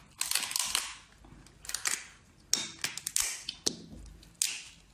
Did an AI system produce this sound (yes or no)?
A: no